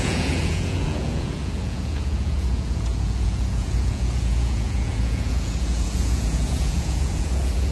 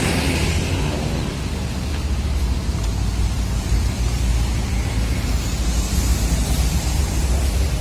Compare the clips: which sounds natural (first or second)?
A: second